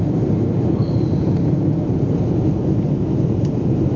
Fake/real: real